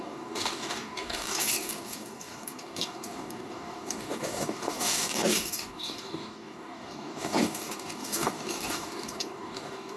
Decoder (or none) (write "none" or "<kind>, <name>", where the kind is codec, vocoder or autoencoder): codec, DAC